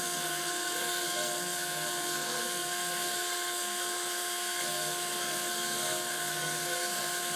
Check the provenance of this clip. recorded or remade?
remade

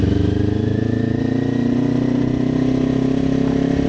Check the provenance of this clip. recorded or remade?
recorded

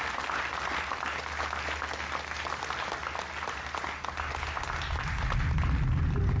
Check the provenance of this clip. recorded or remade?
recorded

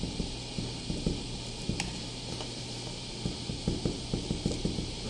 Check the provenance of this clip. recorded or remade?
recorded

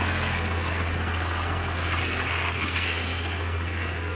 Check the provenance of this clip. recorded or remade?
remade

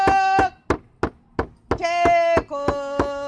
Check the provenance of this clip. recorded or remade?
recorded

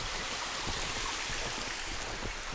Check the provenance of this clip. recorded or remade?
recorded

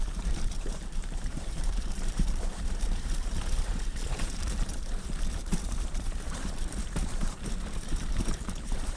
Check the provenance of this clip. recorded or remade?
remade